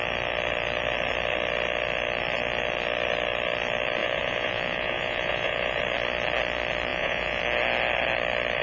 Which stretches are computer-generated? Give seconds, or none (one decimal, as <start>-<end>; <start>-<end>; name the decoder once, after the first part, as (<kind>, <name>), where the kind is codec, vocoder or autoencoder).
4.0-5.8 (vocoder, Vocos); 6.9-7.4